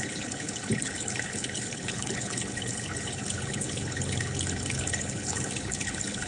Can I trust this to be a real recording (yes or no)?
no